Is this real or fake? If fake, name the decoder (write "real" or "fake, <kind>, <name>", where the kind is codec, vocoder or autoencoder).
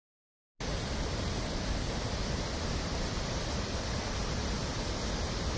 real